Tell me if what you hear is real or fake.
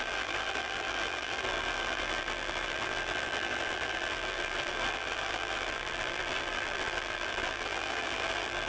fake